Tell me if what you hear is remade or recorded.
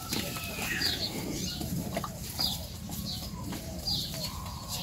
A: remade